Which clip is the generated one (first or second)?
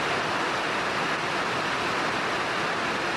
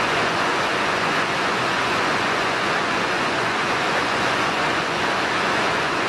second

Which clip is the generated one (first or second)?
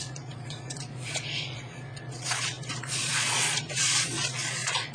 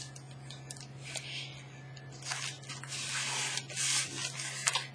first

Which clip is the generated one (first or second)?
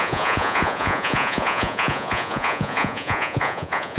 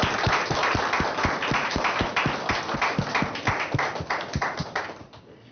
first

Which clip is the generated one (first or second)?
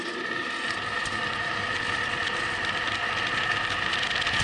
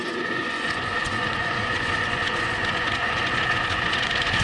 second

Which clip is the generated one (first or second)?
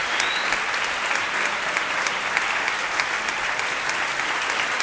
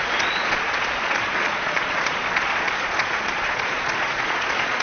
second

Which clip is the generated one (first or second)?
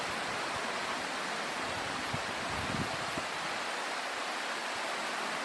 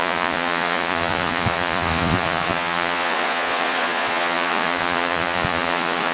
second